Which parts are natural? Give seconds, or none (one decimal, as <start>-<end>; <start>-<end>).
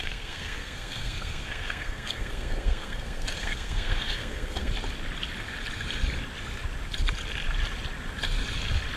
4.7-9.0